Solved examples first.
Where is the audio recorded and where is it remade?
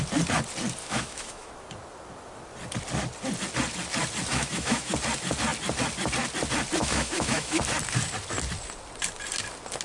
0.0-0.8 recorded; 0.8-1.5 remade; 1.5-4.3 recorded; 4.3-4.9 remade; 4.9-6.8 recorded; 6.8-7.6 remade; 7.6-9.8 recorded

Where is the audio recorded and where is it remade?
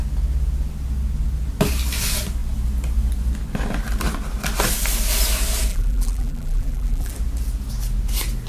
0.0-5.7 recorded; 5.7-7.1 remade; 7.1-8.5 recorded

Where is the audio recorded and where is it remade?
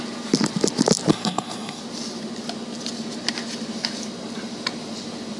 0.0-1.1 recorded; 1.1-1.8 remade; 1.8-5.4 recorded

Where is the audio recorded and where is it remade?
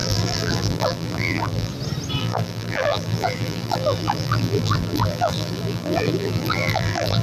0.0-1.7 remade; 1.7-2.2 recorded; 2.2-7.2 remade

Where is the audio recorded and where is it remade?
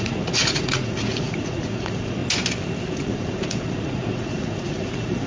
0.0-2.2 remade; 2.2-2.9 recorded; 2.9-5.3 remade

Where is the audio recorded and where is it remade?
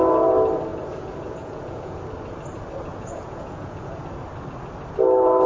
0.0-0.7 recorded; 0.7-2.0 remade; 2.0-2.9 recorded; 2.9-4.0 remade; 4.0-5.5 recorded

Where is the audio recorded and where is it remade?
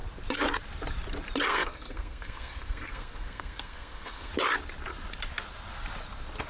0.0-1.5 recorded; 1.5-4.3 remade; 4.3-6.5 recorded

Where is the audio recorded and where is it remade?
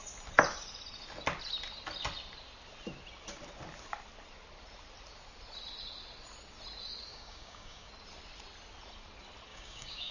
0.0-7.1 recorded; 7.1-7.9 remade; 7.9-9.5 recorded; 9.5-10.1 remade